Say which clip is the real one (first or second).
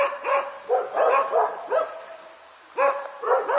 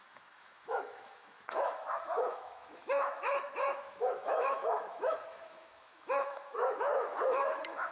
first